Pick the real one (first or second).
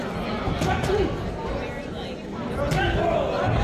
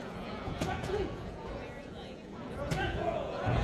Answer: first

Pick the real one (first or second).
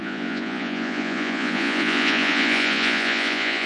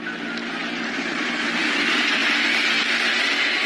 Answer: second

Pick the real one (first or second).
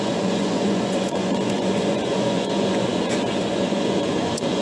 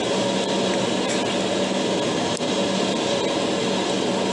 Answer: second